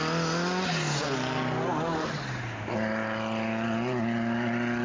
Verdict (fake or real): real